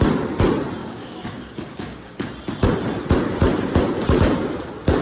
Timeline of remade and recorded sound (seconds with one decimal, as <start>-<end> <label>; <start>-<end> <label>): 0.0-0.8 recorded; 0.8-2.3 remade; 2.3-5.0 recorded